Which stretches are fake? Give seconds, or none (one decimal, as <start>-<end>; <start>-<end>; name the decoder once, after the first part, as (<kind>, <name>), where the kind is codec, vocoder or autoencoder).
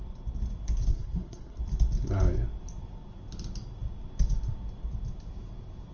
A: 0.9-1.6 (codec, SNAC)